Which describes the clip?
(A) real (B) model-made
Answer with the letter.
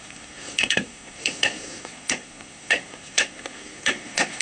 B